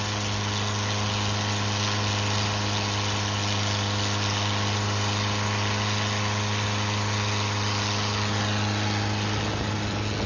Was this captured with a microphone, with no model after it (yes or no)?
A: yes